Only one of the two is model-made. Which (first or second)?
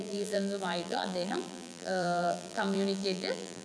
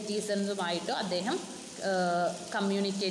first